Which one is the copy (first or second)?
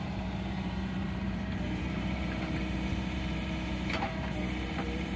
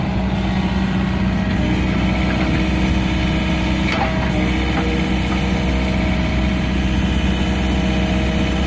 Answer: first